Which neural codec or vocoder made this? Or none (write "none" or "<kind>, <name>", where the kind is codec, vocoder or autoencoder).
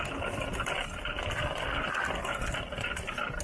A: none